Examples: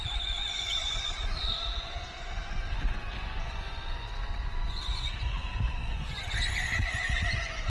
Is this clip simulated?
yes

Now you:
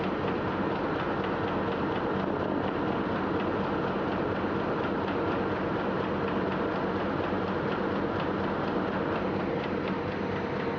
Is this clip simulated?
no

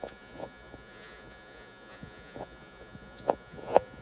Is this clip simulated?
yes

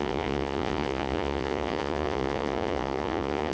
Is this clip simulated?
yes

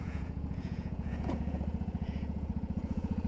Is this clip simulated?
yes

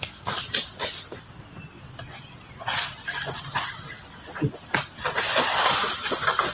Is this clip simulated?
no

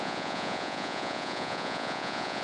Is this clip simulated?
yes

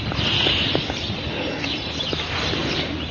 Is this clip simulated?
no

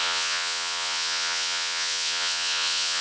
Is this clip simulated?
yes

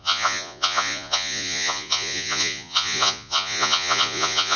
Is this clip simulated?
yes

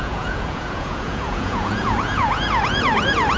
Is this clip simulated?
yes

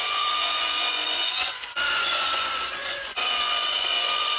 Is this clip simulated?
yes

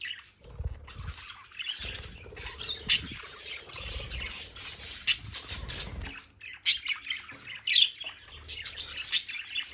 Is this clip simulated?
no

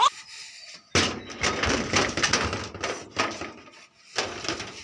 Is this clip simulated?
no